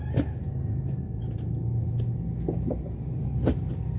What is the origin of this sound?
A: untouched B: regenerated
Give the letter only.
A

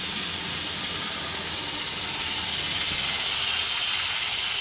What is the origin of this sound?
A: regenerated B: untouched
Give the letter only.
B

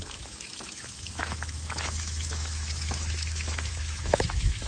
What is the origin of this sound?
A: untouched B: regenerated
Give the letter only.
B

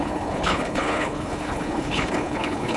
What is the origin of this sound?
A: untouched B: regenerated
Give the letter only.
B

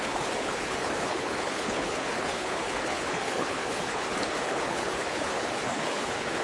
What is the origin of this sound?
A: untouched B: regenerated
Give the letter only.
B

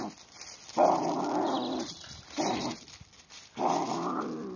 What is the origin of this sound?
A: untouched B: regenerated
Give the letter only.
A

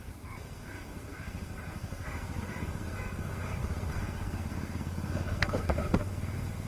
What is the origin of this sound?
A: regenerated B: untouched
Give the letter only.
A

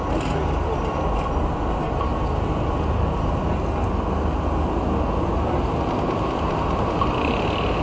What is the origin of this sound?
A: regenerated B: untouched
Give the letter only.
B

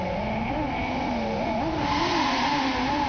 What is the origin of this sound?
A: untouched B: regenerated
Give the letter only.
A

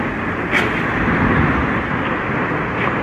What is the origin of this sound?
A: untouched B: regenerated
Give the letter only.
A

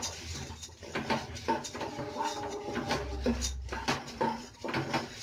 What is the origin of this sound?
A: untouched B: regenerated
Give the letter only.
A